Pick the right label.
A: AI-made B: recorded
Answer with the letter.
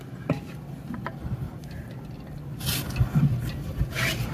B